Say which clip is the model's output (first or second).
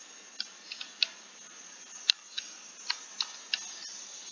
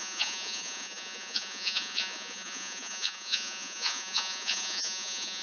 second